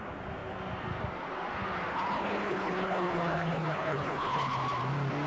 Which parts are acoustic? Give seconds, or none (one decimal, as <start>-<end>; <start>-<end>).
0.0-1.9; 4.6-5.3